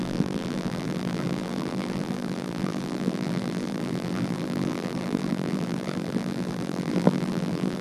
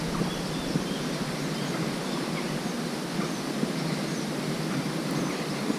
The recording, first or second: second